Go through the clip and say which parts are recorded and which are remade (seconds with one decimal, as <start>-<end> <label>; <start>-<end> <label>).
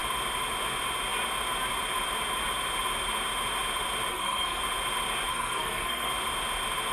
0.0-4.1 recorded; 4.1-4.6 remade; 4.6-5.3 recorded; 5.3-6.1 remade; 6.1-6.9 recorded